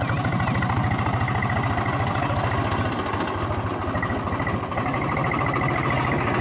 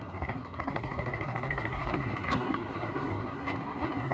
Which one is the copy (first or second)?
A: second